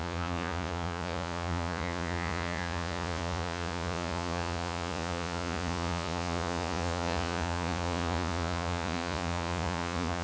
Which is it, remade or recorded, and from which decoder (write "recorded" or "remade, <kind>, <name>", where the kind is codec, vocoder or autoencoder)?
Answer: remade, vocoder, Vocos